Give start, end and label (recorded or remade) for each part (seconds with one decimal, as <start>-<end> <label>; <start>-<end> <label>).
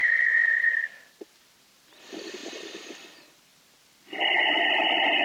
0.0-0.6 remade; 0.6-5.2 recorded